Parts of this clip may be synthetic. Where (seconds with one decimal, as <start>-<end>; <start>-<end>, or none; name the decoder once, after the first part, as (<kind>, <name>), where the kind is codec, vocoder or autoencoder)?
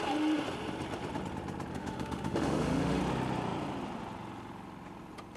1.7-3.0 (autoencoder, DAC-VAE)